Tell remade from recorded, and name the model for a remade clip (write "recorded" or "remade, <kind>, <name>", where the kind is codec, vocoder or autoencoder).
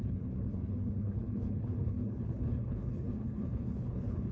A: remade, codec, HILCodec